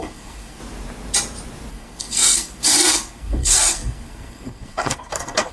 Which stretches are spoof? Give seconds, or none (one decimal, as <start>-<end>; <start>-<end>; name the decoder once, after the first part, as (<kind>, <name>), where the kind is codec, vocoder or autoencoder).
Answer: 0.0-0.6 (codec, SNAC); 1.7-5.5